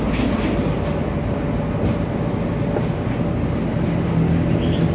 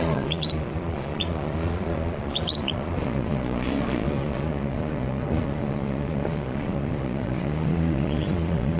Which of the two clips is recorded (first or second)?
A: first